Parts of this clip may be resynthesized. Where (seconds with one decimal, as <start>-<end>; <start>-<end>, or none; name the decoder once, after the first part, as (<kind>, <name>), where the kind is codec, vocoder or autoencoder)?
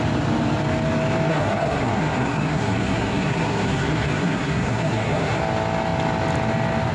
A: 1.3-5.4 (codec, SNAC)